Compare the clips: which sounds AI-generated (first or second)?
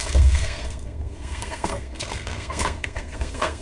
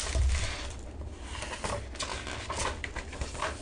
first